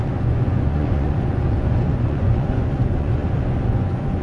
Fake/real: fake